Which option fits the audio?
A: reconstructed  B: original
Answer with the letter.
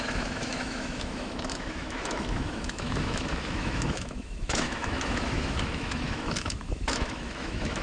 A